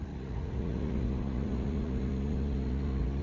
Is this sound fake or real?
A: fake